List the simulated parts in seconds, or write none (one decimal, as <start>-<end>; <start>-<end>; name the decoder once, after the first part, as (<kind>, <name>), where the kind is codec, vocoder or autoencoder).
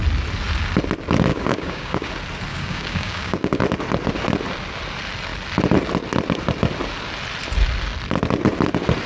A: 1.3-2.1 (codec, DAC); 2.5-3.6